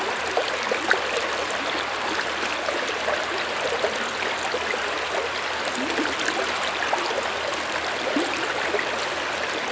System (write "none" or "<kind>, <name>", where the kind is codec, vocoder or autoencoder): none